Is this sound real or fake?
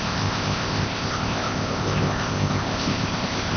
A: fake